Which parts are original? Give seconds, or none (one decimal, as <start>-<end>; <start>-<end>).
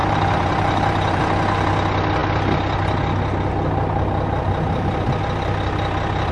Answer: 1.2-6.3